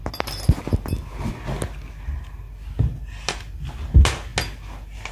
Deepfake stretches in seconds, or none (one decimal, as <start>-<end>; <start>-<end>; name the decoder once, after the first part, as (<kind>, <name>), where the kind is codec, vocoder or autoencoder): none